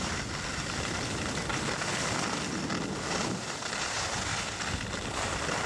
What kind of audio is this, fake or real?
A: real